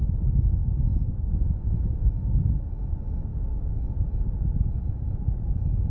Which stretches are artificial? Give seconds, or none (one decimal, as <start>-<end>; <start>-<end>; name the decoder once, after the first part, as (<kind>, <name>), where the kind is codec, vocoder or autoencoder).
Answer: 0.6-1.1 (codec, DAC); 3.3-4.1

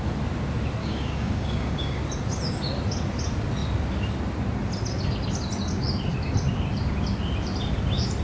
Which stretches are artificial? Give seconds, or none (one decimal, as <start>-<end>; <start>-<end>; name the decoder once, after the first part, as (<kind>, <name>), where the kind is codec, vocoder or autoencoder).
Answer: 0.8-2.0 (codec, DAC)

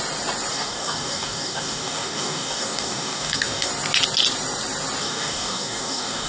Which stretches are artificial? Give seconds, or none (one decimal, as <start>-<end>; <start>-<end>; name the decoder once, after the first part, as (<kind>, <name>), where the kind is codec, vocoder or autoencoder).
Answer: 0.5-3.7 (codec, DAC); 5.0-6.3

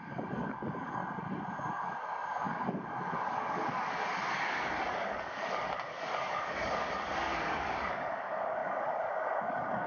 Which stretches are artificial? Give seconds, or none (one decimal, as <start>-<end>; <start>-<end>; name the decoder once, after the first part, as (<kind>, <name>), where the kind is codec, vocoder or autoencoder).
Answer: 0.0-1.0 (codec, DAC); 1.7-9.9

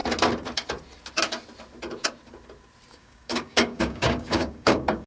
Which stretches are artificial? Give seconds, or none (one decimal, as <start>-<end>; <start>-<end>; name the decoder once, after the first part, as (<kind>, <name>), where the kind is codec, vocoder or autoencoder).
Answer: 2.9-5.1 (codec, DAC)

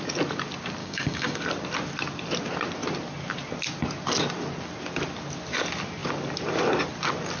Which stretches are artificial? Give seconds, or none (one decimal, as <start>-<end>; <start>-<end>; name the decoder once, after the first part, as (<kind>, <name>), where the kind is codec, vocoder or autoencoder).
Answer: 0.8-1.4 (codec, DAC)

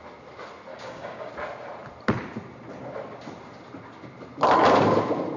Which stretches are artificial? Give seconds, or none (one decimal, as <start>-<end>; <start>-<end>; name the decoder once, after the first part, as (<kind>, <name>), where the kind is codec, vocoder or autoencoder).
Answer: 0.7-1.3 (codec, DAC)

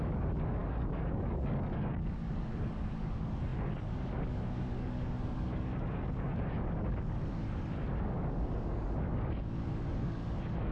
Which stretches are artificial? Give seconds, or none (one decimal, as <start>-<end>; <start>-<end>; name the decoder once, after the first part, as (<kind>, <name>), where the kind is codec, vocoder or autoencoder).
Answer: 0.0-10.7 (codec, DAC)